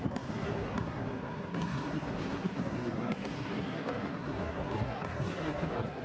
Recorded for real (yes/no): no